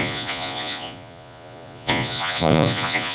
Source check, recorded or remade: remade